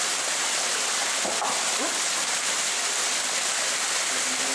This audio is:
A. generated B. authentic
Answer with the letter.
B